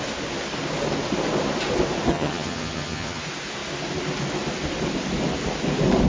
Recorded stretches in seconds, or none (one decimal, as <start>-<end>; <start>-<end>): 0.0-2.1; 3.2-6.1